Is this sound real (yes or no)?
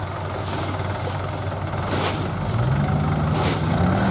yes